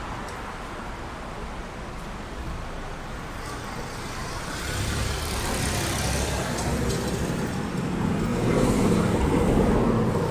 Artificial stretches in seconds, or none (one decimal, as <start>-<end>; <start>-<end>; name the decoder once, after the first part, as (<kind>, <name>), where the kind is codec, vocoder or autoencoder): 4.2-5.6 (vocoder, BigVGAN v2); 8.3-9.7